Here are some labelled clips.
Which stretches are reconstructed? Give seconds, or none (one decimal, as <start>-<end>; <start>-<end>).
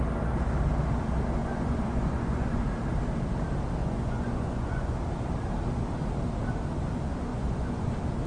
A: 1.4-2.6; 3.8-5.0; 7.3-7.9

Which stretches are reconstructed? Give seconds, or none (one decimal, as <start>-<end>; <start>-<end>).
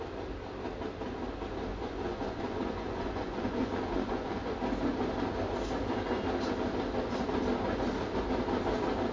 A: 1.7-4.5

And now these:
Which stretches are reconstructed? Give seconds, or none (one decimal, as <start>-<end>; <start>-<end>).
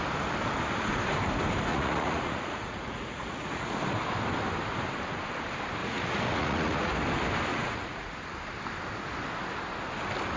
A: 1.7-3.8; 5.8-6.9; 7.5-8.1